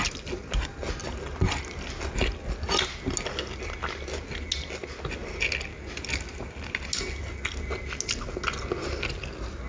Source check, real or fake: real